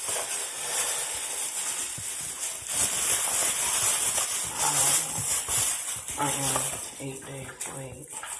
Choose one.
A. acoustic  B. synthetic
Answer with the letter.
A